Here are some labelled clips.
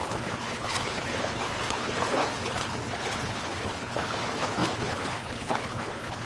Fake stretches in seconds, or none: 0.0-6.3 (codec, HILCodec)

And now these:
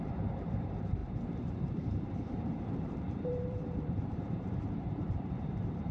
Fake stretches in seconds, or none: 0.0-5.9 (vocoder, BigVGAN v2)

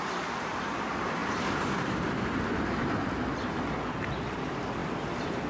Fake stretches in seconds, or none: 0.0-3.5 (vocoder, BigVGAN v2); 4.1-5.5

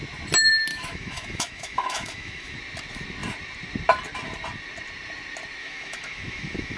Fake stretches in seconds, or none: 0.7-2.6 (autoencoder, DAC-VAE); 5.6-6.8

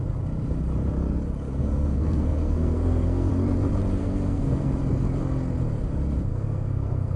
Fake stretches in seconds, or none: 1.5-3.3 (codec, SNAC); 4.0-4.8; 6.3-7.2

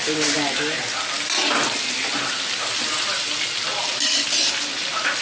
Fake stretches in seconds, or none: none

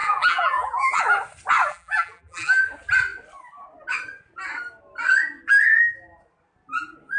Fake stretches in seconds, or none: 0.0-1.0 (vocoder, BigVGAN v2); 1.7-2.6

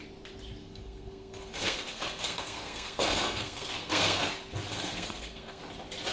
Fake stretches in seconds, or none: 0.6-4.3 (codec, SNAC); 4.7-5.6